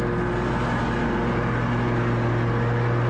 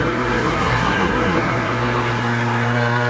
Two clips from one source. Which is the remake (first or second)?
second